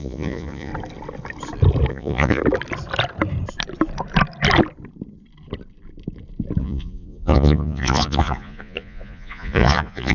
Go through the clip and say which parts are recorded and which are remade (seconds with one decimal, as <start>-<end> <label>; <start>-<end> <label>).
0.0-0.7 remade; 0.7-1.9 recorded; 1.9-2.4 remade; 2.4-6.6 recorded; 6.6-10.1 remade